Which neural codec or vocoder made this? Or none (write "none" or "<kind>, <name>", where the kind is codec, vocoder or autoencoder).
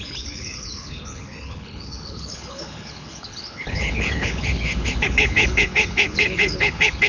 codec, HILCodec